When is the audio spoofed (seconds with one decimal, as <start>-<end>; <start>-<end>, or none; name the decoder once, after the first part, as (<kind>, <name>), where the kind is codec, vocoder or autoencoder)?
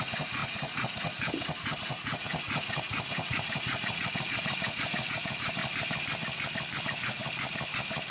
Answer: 0.0-5.6 (vocoder, Vocos); 6.8-7.2